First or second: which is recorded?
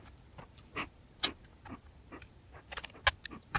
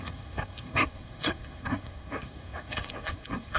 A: first